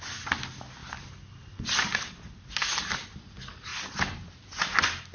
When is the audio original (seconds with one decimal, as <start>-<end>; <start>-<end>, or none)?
0.0-5.1